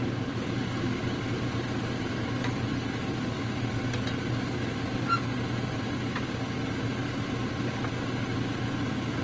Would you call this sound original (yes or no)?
yes